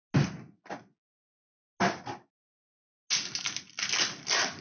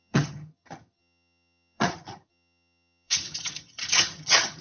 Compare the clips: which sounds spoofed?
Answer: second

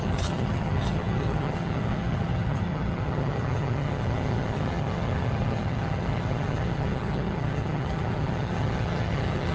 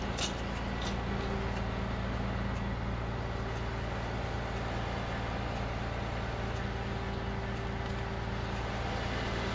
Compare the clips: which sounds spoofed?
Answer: first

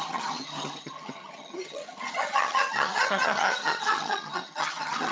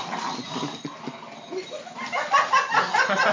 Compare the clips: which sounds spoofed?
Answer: first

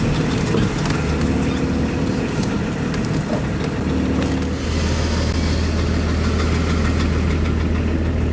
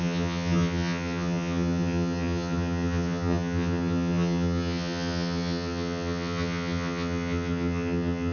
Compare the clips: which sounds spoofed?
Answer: second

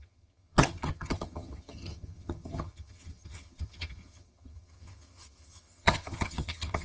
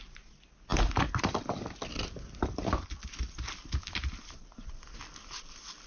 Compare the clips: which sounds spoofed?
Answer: first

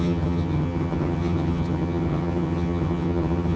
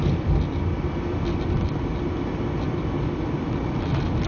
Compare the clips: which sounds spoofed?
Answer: first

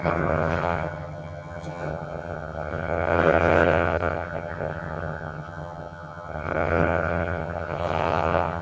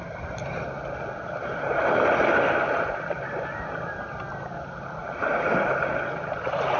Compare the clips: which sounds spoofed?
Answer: first